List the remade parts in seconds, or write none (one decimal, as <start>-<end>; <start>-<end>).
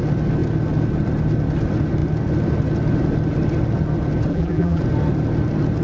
4.3-4.8